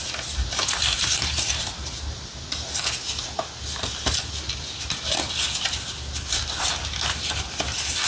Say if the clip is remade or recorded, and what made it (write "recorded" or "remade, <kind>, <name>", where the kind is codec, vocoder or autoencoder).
recorded